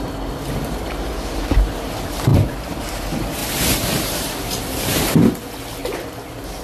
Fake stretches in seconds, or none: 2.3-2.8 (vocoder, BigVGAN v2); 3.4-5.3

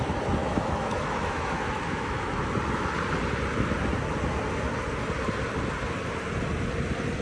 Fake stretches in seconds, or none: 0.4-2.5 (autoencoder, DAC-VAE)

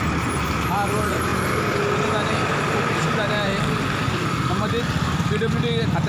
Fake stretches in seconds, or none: none

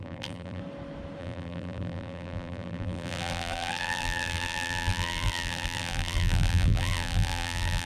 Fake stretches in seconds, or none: 0.0-0.6 (vocoder, BigVGAN v2); 1.2-7.8